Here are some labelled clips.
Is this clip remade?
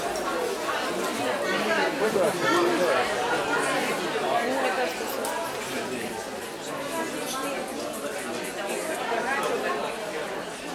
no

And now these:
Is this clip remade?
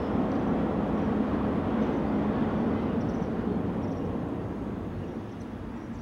no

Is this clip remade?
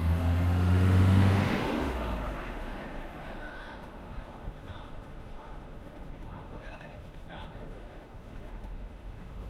yes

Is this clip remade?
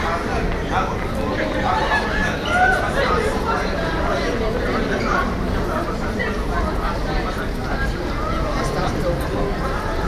no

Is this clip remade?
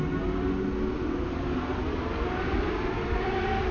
no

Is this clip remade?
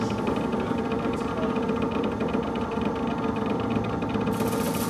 no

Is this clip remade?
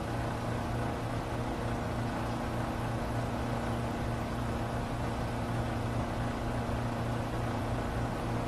no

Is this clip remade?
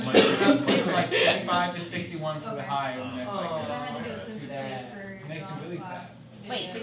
no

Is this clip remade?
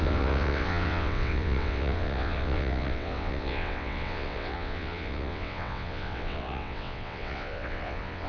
yes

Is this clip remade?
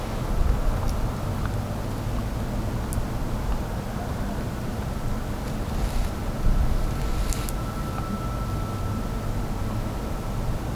no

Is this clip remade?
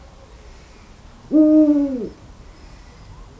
no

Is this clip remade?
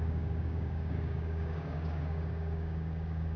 yes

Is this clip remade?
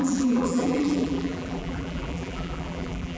yes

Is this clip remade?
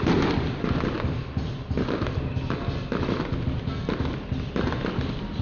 no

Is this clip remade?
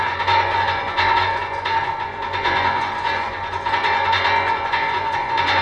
yes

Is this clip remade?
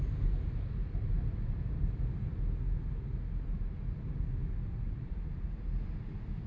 no